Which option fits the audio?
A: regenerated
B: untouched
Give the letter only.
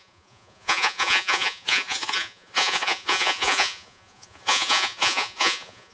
A